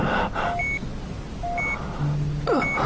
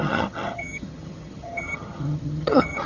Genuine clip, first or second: first